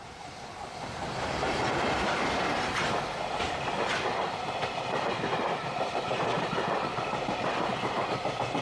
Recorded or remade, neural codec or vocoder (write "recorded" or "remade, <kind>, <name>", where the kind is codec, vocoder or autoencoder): remade, vocoder, BigVGAN v2